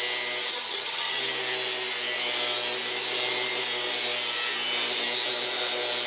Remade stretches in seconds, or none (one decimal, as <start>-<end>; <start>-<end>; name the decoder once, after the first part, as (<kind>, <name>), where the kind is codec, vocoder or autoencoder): 0.5-1.2 (vocoder, HiFi-GAN)